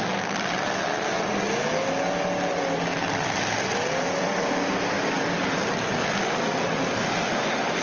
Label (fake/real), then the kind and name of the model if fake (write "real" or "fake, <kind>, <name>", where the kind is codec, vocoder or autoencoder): real